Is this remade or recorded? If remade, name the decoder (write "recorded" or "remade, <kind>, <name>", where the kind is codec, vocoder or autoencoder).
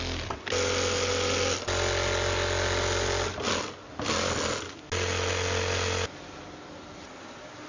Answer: recorded